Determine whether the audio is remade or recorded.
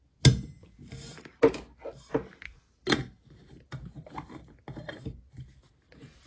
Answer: recorded